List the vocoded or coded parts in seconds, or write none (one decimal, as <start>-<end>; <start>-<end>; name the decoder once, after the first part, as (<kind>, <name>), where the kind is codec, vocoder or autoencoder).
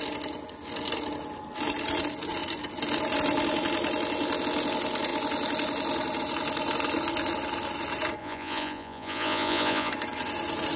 8.2-9.9 (vocoder, Vocos)